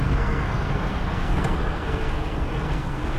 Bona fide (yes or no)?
no